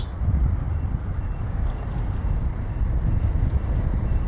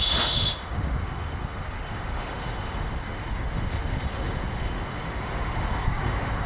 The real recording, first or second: first